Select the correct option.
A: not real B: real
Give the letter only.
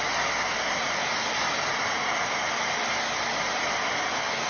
B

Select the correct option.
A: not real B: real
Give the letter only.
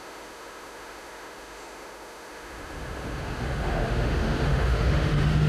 A